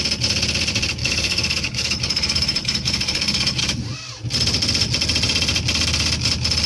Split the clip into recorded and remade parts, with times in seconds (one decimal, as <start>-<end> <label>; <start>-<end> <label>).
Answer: 0.0-1.0 recorded; 1.0-3.6 remade; 3.6-6.7 recorded